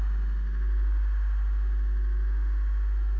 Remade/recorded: recorded